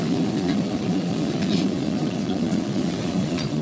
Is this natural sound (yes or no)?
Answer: no